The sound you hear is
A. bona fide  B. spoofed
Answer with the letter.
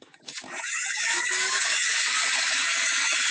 B